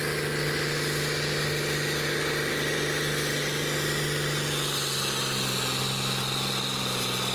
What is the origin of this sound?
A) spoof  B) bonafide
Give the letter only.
B